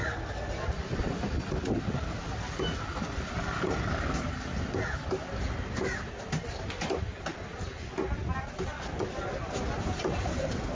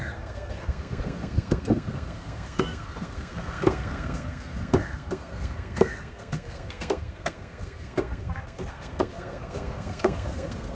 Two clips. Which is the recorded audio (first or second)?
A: first